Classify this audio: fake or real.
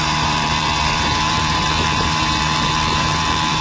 fake